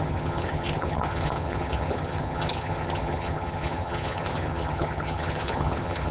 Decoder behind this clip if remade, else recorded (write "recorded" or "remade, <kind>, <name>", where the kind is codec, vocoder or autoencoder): remade, vocoder, HiFi-GAN